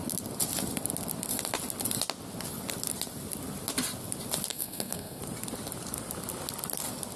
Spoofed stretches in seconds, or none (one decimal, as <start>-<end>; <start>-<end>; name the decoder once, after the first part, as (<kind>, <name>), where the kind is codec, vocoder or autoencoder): 4.5-5.2 (codec, SNAC)